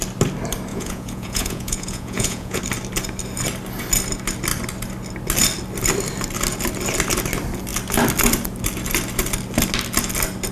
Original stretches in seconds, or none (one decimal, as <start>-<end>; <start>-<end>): 0.0-0.7; 2.6-10.5